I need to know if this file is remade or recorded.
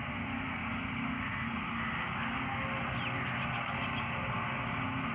recorded